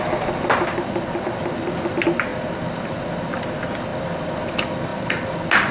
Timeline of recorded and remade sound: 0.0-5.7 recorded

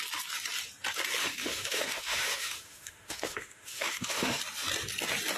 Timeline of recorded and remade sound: 0.0-1.2 recorded; 1.2-4.4 remade; 4.4-5.4 recorded

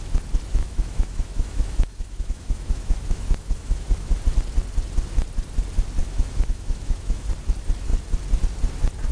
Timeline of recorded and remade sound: 0.0-0.6 recorded; 0.6-4.2 remade; 4.2-6.0 recorded; 6.0-7.3 remade; 7.3-9.1 recorded

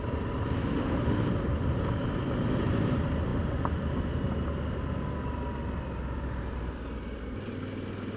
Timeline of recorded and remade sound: 0.0-0.6 recorded; 0.6-1.2 remade; 1.2-8.2 recorded

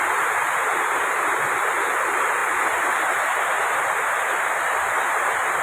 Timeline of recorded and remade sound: 0.0-5.6 recorded

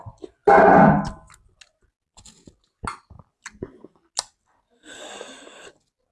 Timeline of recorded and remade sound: 0.0-6.1 recorded

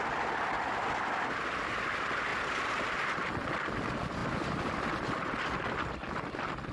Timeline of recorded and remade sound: 0.0-6.7 recorded